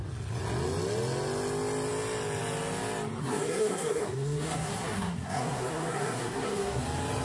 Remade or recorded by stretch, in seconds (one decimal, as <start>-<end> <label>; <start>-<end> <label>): 0.0-3.2 recorded; 3.2-6.8 remade; 6.8-7.2 recorded